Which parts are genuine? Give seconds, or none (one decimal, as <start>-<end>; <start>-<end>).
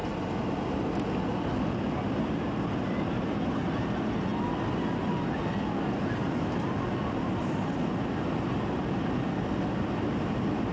0.0-6.2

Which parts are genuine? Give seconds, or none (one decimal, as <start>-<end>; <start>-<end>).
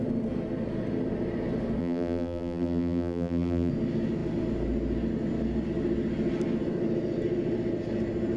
0.0-1.8; 3.7-8.4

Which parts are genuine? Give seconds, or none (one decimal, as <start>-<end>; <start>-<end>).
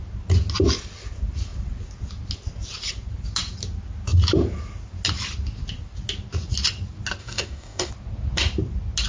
0.0-7.2; 7.9-9.1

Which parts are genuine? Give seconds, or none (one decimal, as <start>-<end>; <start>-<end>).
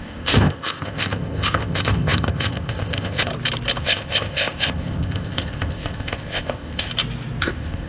3.3-3.8; 6.9-7.4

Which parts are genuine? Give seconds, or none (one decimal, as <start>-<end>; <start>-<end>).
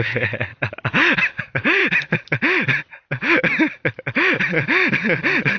0.5-1.4; 1.8-5.6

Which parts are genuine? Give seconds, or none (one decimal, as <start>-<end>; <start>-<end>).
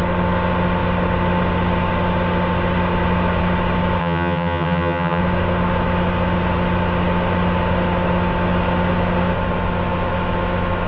0.0-4.0; 5.2-10.9